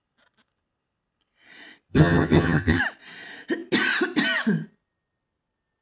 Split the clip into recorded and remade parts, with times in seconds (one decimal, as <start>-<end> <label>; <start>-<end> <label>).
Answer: 0.0-1.9 recorded; 1.9-2.8 remade; 2.8-5.8 recorded